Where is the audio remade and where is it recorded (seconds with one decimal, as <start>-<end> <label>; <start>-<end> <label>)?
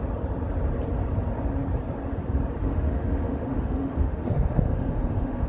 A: 0.0-2.6 recorded; 2.6-5.5 remade